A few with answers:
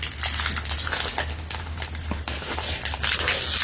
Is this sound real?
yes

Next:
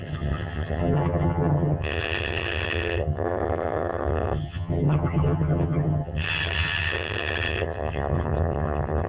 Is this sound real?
no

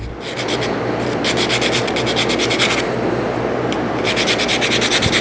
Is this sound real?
yes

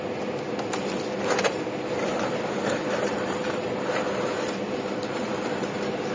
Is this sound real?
yes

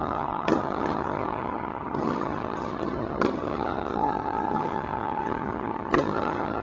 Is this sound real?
no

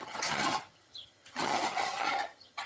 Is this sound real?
no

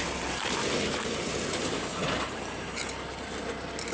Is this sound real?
yes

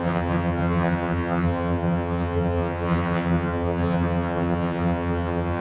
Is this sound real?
no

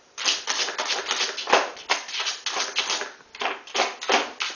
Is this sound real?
yes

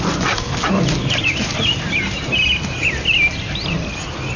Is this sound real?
yes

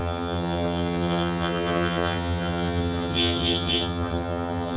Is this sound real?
no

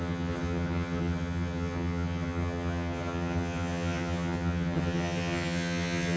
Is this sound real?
no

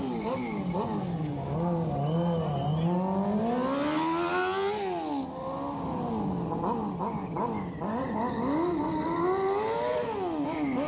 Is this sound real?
yes